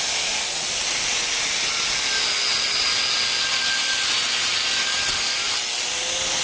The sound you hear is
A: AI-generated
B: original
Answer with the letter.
B